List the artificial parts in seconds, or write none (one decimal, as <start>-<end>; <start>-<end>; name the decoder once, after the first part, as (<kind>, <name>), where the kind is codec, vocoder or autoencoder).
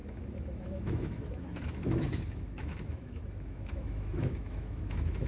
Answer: 0.0-5.3 (autoencoder, DAC-VAE)